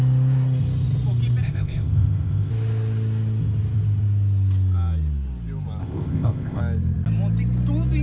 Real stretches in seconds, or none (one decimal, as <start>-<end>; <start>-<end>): 0.0-1.4; 2.5-5.8; 6.6-8.0